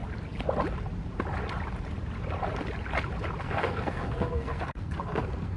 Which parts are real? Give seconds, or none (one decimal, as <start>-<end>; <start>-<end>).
0.0-3.4